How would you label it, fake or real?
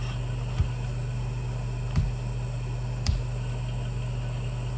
real